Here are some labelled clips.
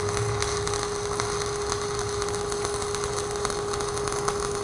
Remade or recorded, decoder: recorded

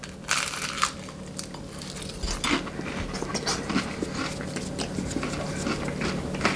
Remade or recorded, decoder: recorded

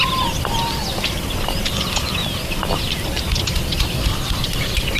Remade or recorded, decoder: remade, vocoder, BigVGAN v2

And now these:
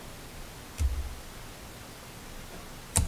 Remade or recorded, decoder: recorded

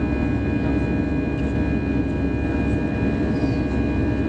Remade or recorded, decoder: recorded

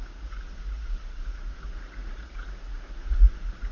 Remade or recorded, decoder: remade, vocoder, Vocos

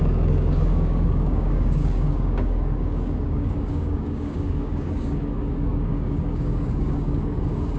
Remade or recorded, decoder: remade, codec, DAC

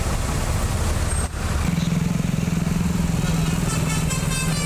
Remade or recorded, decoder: recorded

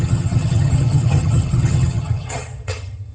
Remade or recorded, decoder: remade, vocoder, HiFi-GAN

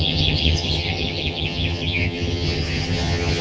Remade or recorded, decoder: remade, vocoder, HiFi-GAN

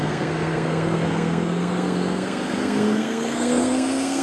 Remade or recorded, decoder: remade, codec, SNAC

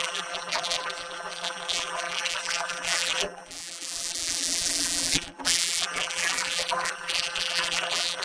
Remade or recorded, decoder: remade, vocoder, BigVGAN v2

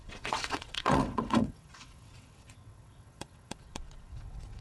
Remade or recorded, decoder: remade, vocoder, WaveNeXt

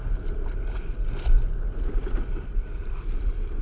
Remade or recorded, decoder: recorded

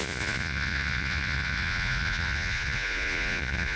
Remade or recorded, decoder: remade, vocoder, Vocos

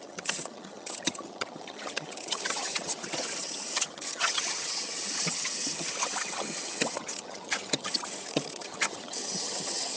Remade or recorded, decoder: remade, vocoder, HiFi-GAN